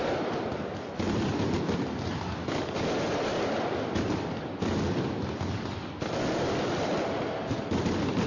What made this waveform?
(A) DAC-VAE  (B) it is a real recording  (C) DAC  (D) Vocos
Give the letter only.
B